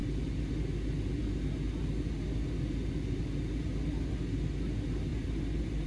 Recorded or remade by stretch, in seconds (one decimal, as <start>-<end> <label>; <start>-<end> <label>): 0.0-5.9 recorded

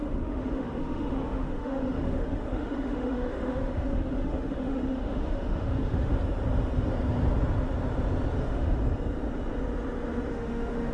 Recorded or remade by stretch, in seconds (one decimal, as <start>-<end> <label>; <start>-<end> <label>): 0.0-6.1 remade; 6.1-8.4 recorded; 8.4-8.8 remade; 8.8-10.3 recorded; 10.3-10.9 remade

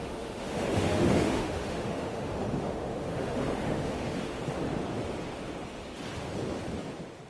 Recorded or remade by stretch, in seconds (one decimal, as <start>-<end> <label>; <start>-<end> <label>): 0.0-4.4 remade; 4.4-7.3 recorded

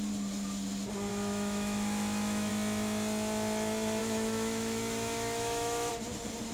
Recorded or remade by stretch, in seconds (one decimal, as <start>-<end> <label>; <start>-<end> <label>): 0.0-1.1 recorded; 1.1-2.5 remade; 2.5-4.0 recorded; 4.0-5.9 remade; 5.9-6.5 recorded

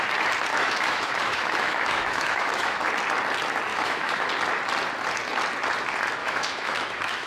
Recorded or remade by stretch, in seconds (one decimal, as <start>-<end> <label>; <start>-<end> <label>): 0.0-0.5 recorded; 0.5-2.9 remade; 2.9-3.7 recorded; 3.7-4.3 remade; 4.3-6.2 recorded; 6.2-7.3 remade